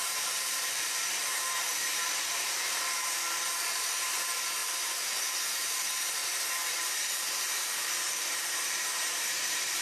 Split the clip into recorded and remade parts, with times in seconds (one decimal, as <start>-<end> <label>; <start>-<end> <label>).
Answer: 0.0-9.8 remade